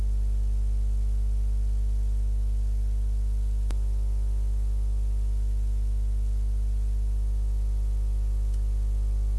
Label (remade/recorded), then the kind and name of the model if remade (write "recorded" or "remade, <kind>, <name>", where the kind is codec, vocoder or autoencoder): recorded